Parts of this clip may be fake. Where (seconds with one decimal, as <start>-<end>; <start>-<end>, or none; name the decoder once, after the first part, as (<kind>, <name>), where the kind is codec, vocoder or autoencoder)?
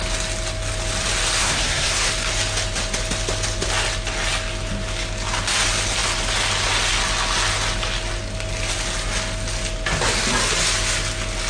1.4-2.1 (codec, SNAC)